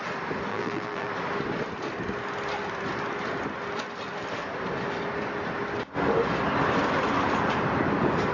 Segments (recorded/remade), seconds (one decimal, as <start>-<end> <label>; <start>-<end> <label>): 0.0-0.5 recorded; 0.5-1.1 remade; 1.1-8.3 recorded